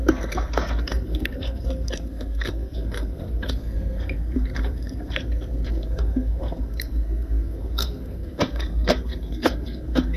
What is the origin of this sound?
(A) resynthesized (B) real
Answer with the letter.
A